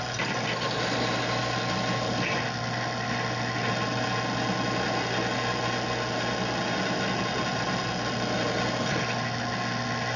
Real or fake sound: real